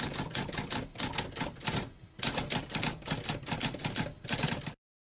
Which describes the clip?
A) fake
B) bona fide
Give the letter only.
B